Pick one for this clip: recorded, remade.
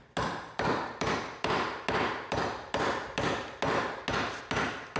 recorded